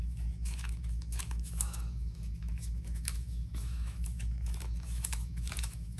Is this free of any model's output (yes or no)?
no